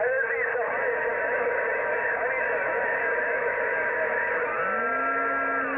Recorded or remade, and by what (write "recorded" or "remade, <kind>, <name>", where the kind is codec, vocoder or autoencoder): recorded